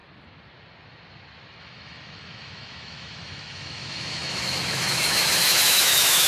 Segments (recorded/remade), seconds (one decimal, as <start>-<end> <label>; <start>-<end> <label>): 0.0-1.6 recorded; 1.6-6.3 remade